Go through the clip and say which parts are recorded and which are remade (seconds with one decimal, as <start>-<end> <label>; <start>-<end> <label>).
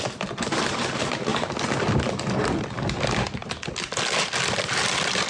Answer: 0.0-5.3 remade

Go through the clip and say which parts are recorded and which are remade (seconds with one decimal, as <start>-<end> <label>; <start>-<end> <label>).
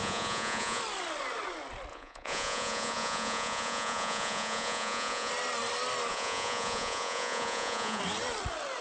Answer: 0.0-0.8 remade; 0.8-1.9 recorded; 1.9-5.3 remade; 5.3-6.1 recorded; 6.1-8.0 remade; 8.0-8.8 recorded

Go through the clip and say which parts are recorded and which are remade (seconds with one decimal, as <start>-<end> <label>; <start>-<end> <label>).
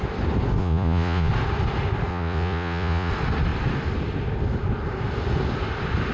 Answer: 0.0-0.6 recorded; 0.6-1.3 remade; 1.3-2.1 recorded; 2.1-3.1 remade; 3.1-6.1 recorded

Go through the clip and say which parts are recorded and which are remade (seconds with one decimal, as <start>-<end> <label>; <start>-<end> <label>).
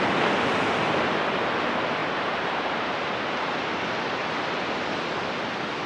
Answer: 0.0-2.0 recorded; 2.0-3.6 remade; 3.6-5.9 recorded